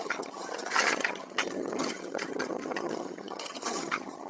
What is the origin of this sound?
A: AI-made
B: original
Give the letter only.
A